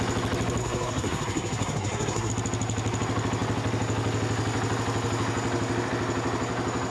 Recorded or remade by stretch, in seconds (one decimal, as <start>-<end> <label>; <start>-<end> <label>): 0.0-0.6 recorded; 0.6-2.3 remade; 2.3-6.9 recorded